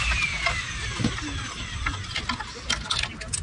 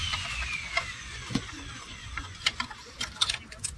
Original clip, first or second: first